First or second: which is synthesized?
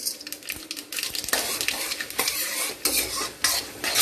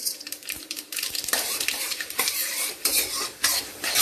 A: second